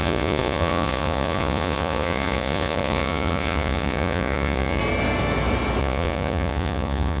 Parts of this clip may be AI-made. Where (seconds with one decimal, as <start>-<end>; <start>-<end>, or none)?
0.0-4.8; 5.8-7.2